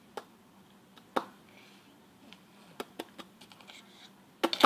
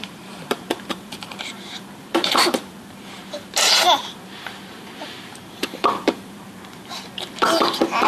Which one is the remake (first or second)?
second